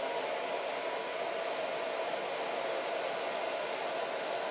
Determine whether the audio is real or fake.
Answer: real